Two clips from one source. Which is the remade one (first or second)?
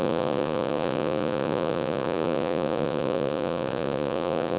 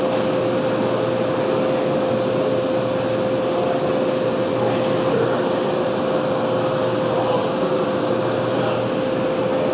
first